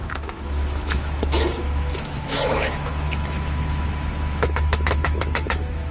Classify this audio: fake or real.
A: fake